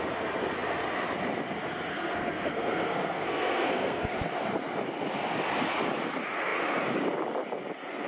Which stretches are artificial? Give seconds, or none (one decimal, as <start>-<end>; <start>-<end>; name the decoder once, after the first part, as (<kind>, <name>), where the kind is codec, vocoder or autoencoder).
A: 1.9-4.1 (codec, SNAC)